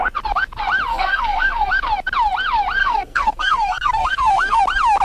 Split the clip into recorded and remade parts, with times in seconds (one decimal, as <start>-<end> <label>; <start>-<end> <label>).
0.0-0.9 recorded; 0.9-1.7 remade; 1.7-2.8 recorded; 2.8-4.6 remade; 4.6-5.0 recorded